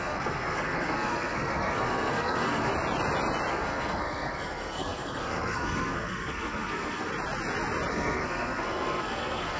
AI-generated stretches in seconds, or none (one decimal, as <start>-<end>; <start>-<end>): 0.0-2.7; 3.5-7.1; 7.9-9.6